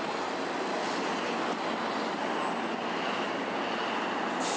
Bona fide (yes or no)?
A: yes